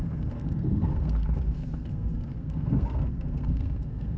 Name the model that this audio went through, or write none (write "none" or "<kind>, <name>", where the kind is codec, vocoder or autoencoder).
codec, SNAC